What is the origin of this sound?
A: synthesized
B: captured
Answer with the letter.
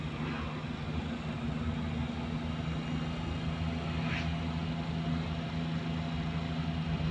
B